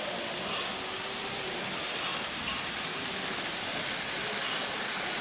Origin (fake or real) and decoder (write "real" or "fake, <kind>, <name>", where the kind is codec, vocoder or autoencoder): real